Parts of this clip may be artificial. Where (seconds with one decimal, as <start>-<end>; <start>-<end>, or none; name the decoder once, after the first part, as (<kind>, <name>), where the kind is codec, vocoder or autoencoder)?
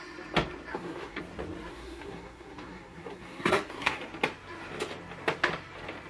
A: 0.7-1.2 (codec, SNAC); 1.7-4.0